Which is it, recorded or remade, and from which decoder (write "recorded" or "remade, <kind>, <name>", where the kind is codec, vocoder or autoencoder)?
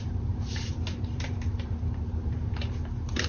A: remade, vocoder, BigVGAN v2